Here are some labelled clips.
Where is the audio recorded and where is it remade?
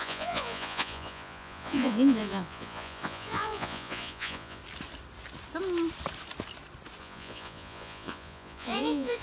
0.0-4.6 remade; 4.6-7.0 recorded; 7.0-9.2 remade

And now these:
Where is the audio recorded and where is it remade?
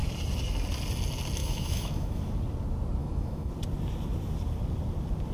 0.0-1.4 recorded; 1.4-2.2 remade; 2.2-3.0 recorded; 3.0-3.5 remade; 3.5-5.3 recorded